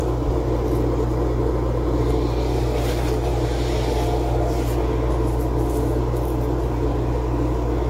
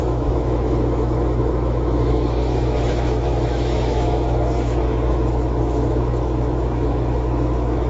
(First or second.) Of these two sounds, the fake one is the second